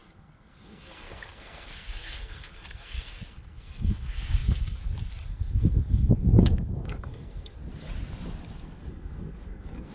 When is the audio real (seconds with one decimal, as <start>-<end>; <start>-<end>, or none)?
7.6-8.6